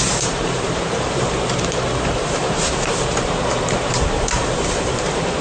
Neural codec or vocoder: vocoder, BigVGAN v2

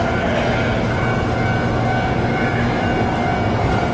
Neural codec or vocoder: none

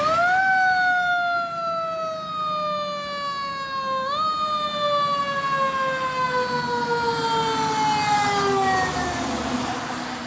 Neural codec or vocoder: none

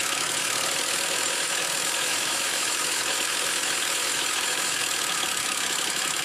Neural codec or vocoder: autoencoder, DAC-VAE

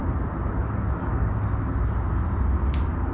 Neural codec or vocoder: none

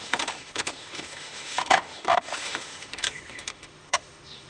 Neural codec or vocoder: autoencoder, DAC-VAE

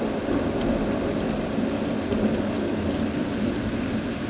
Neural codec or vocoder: none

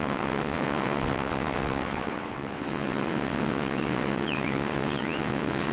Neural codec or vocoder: vocoder, WaveNeXt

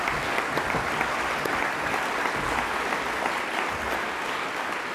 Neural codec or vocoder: none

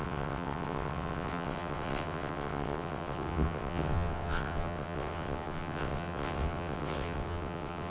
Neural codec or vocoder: vocoder, WaveNeXt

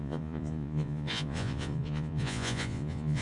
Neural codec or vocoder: vocoder, Vocos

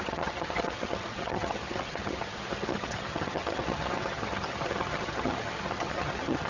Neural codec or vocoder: vocoder, HiFi-GAN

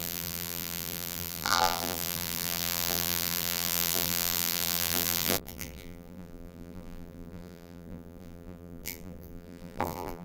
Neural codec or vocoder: vocoder, BigVGAN v2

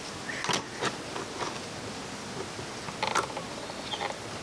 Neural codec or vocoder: none